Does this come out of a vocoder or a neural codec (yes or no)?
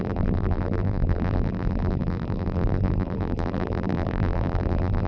yes